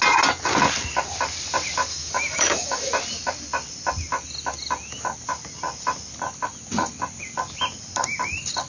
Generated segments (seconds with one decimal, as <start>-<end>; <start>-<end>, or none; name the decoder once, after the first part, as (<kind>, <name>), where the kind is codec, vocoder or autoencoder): 1.9-2.9 (autoencoder, DAC-VAE)